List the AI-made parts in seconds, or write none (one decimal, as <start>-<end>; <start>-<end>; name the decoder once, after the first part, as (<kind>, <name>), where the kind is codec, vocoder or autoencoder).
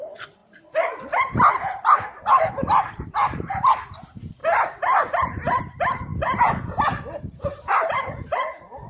0.0-0.4 (vocoder, BigVGAN v2); 2.5-4.4; 5.6-6.1; 7.2-8.9